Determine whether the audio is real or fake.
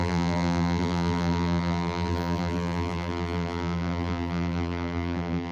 fake